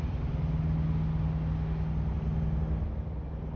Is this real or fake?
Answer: real